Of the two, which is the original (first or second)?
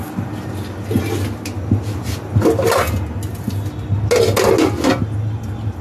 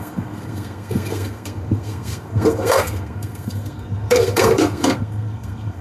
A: first